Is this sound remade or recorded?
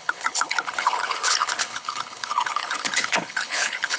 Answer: remade